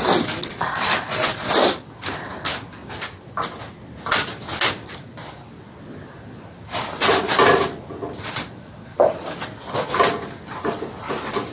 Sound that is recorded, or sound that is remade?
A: recorded